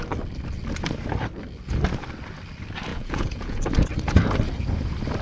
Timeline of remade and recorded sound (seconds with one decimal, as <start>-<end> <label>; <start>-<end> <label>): 0.0-2.9 recorded; 2.9-3.7 remade; 3.7-5.2 recorded